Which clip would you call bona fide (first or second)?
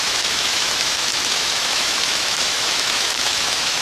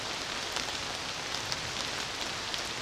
second